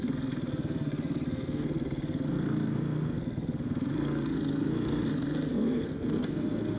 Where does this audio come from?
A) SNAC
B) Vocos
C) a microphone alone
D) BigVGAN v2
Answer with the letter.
A